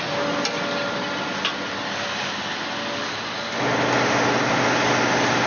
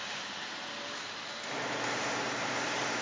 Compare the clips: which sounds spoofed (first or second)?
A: second